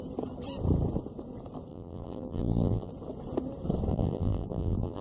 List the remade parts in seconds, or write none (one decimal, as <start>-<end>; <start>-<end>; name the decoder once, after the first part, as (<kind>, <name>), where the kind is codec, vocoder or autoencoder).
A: 1.7-2.9 (vocoder, BigVGAN v2); 3.9-5.0